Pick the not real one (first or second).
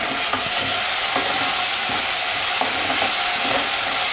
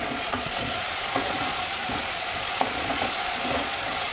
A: second